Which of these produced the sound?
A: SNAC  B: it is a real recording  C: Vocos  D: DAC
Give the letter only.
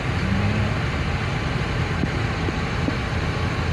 B